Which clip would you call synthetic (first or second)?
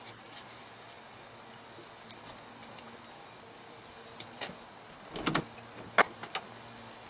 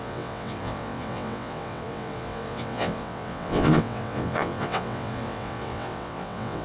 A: second